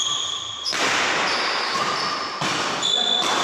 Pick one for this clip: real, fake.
real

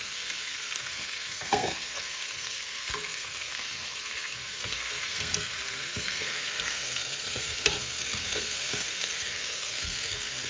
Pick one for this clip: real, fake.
fake